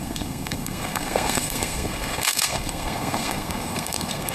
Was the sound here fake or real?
fake